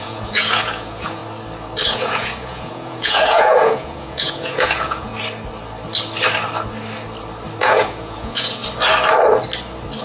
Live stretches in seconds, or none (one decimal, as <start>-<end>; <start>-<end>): 1.2-1.9; 5.1-7.6; 8.6-10.0